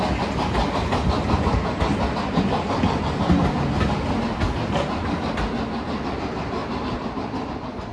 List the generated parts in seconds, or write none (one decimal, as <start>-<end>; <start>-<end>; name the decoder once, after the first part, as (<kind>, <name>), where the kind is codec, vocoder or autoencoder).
none